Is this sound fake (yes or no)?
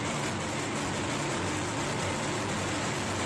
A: no